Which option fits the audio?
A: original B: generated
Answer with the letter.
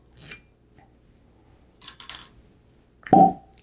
A